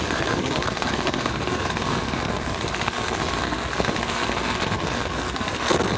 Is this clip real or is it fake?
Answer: fake